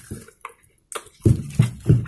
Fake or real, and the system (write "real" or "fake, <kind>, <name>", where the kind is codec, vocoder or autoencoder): real